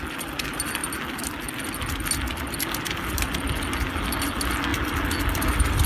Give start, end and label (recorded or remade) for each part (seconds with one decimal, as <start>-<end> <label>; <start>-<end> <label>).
0.0-5.9 recorded